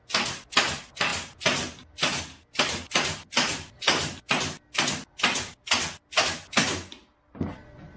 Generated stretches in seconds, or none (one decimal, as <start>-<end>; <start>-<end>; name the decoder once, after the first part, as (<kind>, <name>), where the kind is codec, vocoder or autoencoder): none